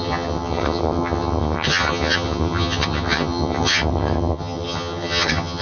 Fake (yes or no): yes